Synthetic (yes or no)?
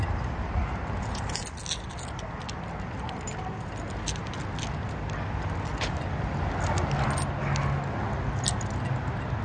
no